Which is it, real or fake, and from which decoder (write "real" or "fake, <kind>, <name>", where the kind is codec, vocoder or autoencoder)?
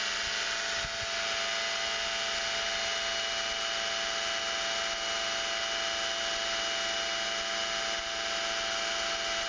real